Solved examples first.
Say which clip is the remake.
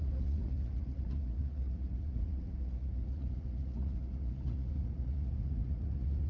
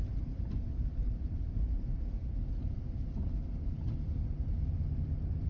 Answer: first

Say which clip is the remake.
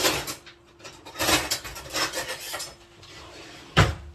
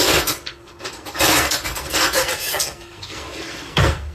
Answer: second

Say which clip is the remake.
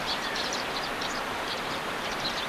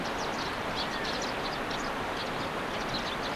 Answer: first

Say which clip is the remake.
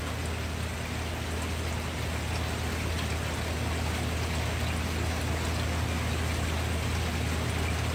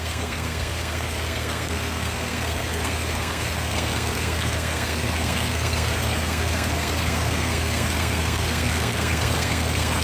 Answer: second